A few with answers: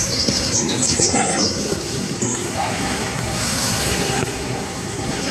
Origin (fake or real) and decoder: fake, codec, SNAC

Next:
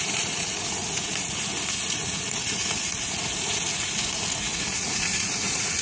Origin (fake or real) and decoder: fake, vocoder, Vocos